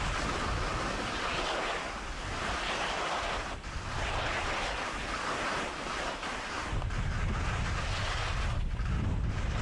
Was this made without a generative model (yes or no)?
yes